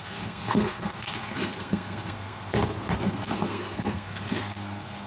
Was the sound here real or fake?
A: fake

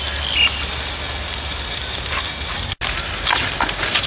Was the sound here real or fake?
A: real